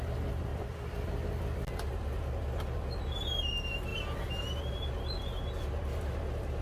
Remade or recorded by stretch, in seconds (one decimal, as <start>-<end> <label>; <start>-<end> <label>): 0.0-6.6 recorded